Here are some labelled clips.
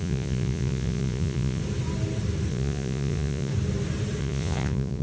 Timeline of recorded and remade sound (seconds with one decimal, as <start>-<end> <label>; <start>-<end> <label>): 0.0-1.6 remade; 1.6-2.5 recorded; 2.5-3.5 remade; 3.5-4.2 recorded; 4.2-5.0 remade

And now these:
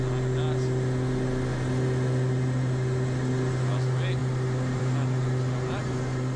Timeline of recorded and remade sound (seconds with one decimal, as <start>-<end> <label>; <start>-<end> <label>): 0.0-6.4 recorded

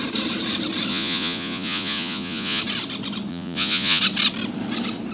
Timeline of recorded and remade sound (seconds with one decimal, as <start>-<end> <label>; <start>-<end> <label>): 0.0-0.9 recorded; 0.9-2.6 remade; 2.6-3.3 recorded; 3.3-4.0 remade; 4.0-5.1 recorded

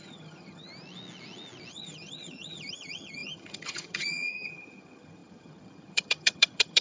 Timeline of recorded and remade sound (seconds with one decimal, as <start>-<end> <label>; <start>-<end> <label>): 0.0-0.7 remade; 0.7-1.7 recorded; 1.7-6.8 remade

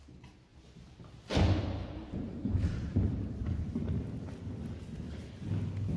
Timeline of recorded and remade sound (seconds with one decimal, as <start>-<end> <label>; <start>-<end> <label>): 0.0-0.5 recorded; 0.5-3.8 remade; 3.8-6.0 recorded

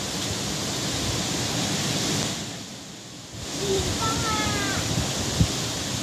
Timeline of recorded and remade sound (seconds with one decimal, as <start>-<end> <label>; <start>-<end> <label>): 0.0-0.6 recorded; 0.6-4.2 remade; 4.2-6.0 recorded